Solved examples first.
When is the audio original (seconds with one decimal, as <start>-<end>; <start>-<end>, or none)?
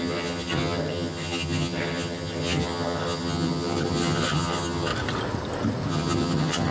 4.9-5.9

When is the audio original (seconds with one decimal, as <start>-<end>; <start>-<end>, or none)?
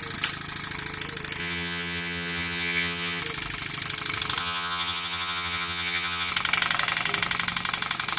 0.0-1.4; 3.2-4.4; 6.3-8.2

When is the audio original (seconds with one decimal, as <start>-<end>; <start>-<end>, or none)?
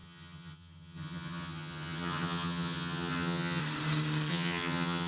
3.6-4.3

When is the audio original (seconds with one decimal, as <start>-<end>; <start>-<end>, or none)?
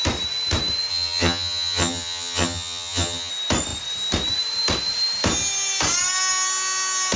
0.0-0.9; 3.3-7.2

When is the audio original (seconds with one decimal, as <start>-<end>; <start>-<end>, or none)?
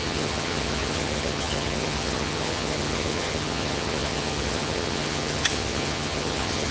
none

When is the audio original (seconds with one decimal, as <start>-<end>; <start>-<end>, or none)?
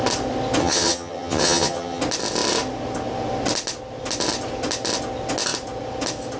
0.0-0.6; 2.0-6.4